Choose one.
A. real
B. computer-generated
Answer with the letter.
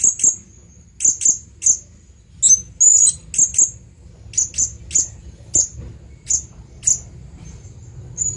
A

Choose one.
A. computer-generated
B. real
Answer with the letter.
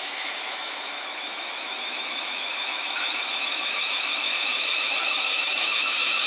A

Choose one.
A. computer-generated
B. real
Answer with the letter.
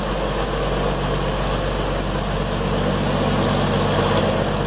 B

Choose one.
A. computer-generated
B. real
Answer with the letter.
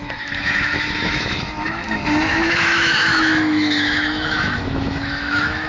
A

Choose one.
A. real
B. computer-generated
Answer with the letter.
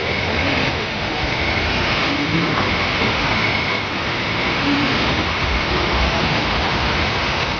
B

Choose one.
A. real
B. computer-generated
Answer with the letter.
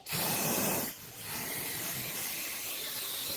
A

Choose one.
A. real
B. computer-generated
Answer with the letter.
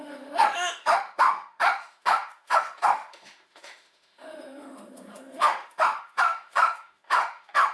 B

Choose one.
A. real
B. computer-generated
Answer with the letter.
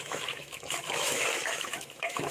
B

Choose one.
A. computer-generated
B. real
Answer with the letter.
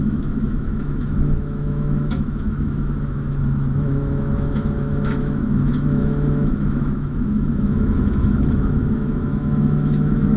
A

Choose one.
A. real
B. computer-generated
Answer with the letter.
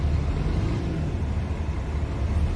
A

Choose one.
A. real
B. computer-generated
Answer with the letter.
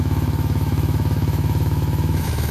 B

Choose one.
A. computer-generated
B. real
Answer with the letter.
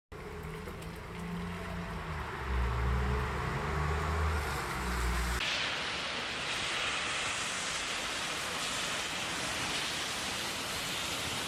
B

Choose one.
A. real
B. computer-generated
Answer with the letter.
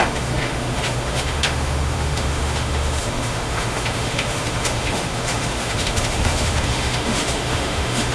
B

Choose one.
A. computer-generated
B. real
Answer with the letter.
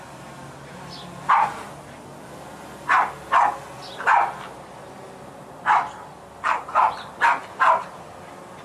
B